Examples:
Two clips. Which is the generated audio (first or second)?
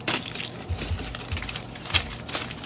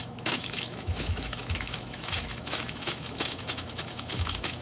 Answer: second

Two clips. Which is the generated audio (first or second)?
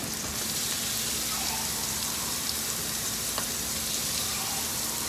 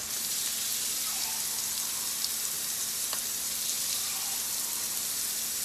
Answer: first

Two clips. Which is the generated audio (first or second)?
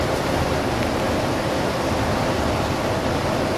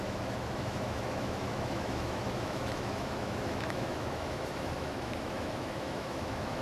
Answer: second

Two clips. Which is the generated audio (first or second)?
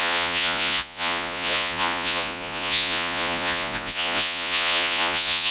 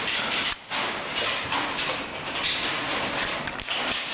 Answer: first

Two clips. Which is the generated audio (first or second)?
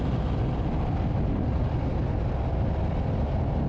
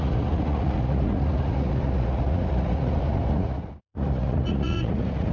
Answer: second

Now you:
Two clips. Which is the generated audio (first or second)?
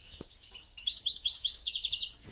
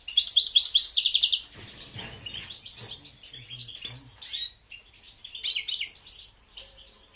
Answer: first